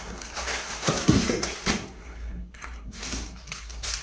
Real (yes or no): no